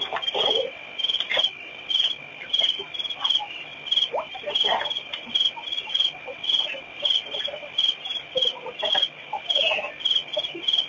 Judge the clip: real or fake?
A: real